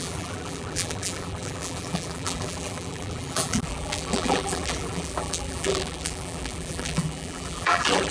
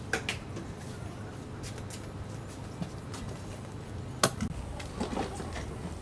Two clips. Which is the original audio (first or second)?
second